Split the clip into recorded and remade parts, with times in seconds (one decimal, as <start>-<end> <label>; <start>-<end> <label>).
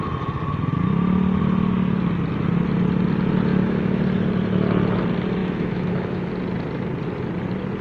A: 0.0-3.5 recorded; 3.5-4.0 remade; 4.0-5.4 recorded; 5.4-6.3 remade; 6.3-7.8 recorded